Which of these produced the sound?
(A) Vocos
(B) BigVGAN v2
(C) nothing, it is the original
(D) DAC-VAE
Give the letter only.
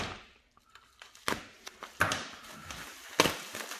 C